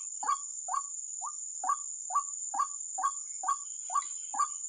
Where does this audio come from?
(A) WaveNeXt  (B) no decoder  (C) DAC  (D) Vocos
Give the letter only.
B